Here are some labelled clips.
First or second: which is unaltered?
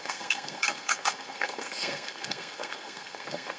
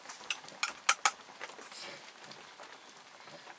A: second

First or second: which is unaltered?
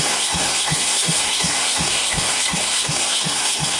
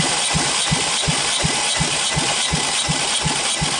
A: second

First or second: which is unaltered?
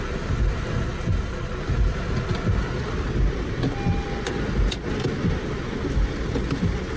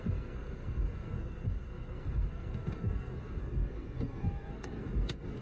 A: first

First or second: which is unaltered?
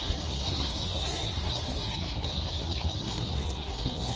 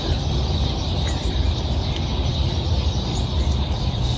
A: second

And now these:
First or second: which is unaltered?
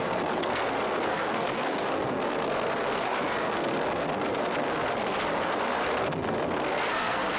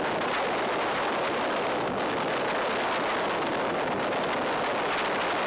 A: second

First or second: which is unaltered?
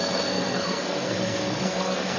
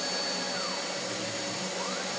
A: second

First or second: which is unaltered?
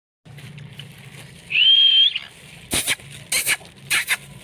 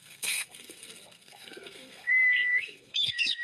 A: first